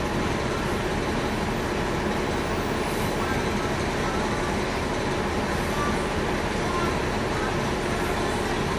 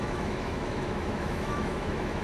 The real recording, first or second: first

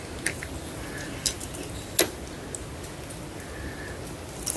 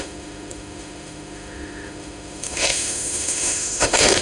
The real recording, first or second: first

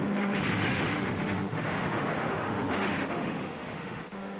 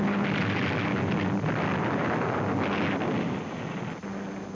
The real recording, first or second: second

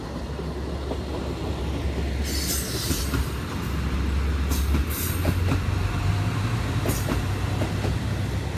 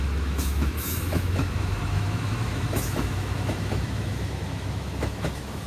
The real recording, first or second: first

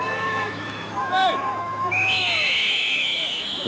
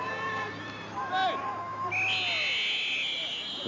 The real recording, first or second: second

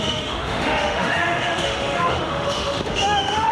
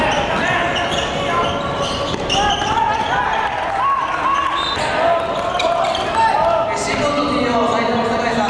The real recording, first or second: second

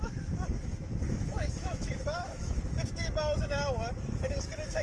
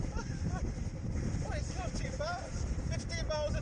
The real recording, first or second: second